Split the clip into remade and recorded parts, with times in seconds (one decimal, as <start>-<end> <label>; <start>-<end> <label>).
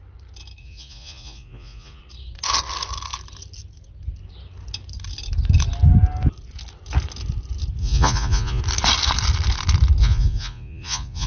0.0-0.6 recorded; 0.6-2.0 remade; 2.0-7.8 recorded; 7.8-8.6 remade; 8.6-10.0 recorded; 10.0-11.3 remade